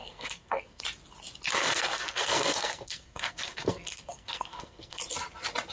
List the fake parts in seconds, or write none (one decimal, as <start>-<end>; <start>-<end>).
0.0-0.8; 1.6-5.0